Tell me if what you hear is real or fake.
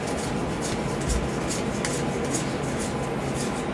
real